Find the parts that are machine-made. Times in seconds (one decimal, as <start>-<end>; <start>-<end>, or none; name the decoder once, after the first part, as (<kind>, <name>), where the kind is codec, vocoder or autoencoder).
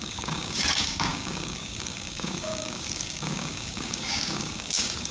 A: 0.0-5.1 (codec, DAC)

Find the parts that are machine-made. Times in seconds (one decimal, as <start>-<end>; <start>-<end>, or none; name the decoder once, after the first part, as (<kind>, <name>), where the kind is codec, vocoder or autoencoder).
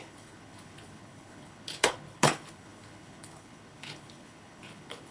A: 0.0-5.1 (codec, HILCodec)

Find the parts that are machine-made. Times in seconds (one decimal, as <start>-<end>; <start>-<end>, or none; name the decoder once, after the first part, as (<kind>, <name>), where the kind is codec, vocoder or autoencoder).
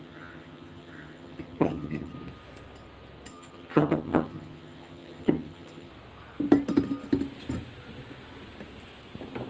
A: 0.0-2.1 (vocoder, HiFi-GAN); 3.3-5.9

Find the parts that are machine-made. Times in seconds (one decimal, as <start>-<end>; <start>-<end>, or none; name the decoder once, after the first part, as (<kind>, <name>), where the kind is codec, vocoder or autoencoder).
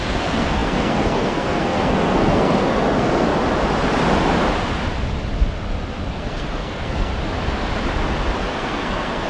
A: 0.0-3.3 (codec, SNAC); 6.1-7.1; 8.4-9.3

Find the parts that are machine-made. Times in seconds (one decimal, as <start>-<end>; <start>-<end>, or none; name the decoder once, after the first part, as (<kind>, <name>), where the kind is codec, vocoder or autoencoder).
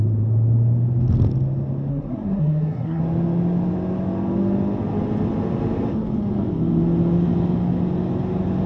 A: 1.9-3.0 (codec, SNAC)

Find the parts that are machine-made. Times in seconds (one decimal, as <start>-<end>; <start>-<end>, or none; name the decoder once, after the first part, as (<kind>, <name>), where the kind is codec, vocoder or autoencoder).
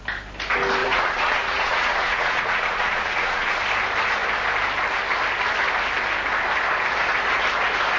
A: 0.8-3.6 (vocoder, Vocos)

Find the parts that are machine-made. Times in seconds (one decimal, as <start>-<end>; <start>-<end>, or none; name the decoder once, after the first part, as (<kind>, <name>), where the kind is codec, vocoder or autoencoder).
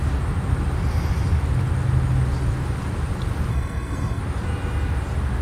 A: 3.5-4.2 (codec, SNAC)